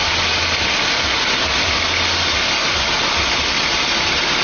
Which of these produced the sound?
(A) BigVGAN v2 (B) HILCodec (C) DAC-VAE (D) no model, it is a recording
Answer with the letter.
D